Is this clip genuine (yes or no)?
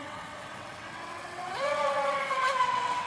no